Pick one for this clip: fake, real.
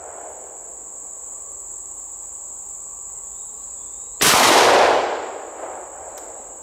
real